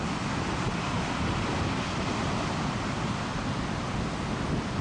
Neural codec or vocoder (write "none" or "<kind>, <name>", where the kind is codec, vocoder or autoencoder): none